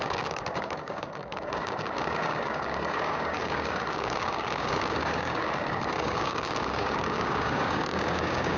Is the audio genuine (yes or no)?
no